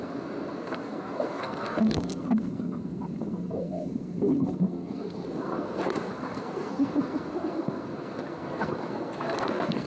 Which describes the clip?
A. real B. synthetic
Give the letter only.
B